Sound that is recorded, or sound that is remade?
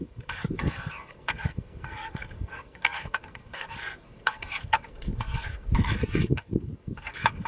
remade